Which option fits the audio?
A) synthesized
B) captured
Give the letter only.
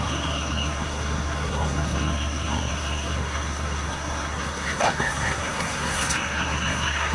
A